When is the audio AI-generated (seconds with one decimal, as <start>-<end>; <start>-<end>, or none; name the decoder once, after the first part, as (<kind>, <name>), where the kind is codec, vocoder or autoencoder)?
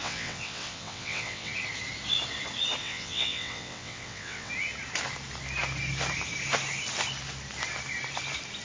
0.0-1.5 (vocoder, WaveNeXt); 2.8-4.5